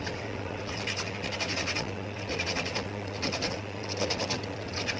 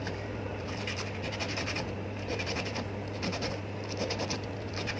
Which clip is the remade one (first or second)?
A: first